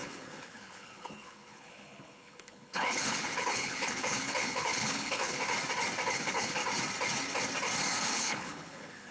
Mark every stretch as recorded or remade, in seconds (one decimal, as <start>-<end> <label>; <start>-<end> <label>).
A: 0.0-5.4 remade; 5.4-6.1 recorded; 6.1-6.6 remade; 6.6-8.0 recorded; 8.0-9.1 remade